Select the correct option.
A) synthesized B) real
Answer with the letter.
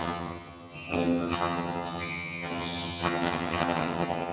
A